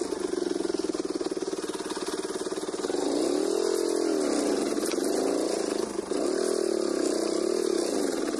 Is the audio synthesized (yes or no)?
no